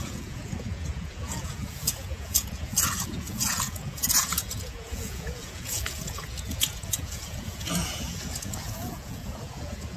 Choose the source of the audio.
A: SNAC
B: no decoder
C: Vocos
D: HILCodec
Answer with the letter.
C